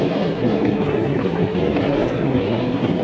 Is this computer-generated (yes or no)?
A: yes